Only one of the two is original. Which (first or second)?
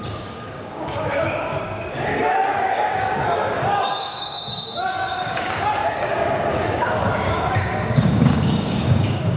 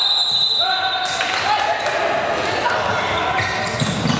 second